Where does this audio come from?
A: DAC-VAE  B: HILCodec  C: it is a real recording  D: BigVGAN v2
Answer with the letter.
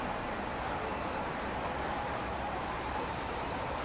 D